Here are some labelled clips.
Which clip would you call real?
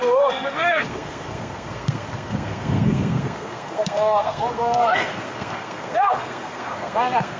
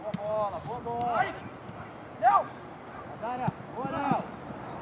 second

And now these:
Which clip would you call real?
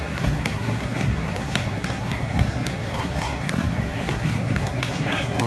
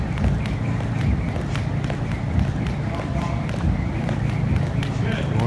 second